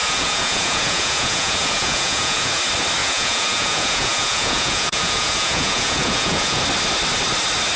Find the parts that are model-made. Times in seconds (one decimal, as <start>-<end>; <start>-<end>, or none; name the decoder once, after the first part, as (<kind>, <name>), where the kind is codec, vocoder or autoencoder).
0.0-2.6 (vocoder, Vocos); 3.0-6.6

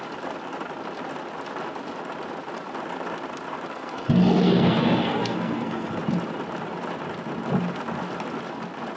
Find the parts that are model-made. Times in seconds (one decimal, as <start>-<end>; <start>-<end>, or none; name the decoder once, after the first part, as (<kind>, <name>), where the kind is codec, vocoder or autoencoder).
3.7-6.0 (codec, SNAC)

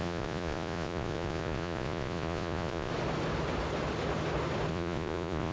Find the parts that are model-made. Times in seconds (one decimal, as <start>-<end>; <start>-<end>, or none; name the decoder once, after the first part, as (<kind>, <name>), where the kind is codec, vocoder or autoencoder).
0.0-2.9 (vocoder, Vocos); 4.7-5.5

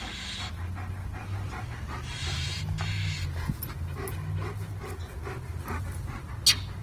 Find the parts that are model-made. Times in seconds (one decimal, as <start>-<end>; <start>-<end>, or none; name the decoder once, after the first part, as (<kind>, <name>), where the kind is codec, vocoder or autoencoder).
1.2-2.6 (vocoder, BigVGAN v2); 5.5-6.3

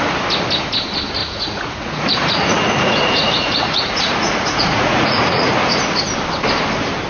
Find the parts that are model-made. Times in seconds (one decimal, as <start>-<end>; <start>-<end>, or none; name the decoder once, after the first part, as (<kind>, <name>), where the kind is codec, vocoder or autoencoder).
1.2-5.5 (vocoder, Vocos)

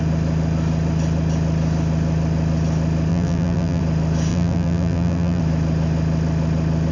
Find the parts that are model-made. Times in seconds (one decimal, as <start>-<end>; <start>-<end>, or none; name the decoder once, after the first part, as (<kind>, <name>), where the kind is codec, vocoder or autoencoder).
3.1-3.8 (vocoder, BigVGAN v2); 4.3-5.4

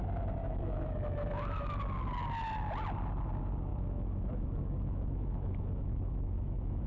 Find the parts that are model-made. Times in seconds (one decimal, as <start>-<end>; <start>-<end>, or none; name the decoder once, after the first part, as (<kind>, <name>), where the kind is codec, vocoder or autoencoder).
0.4-1.8 (autoencoder, DAC-VAE); 3.7-6.9

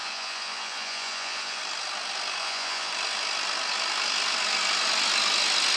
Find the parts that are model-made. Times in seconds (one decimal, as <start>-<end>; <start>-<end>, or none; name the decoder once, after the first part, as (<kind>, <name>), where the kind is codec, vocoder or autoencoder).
0.0-1.6 (vocoder, Vocos); 2.4-2.9